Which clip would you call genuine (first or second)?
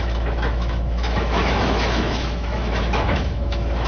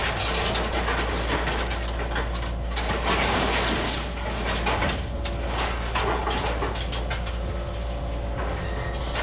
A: second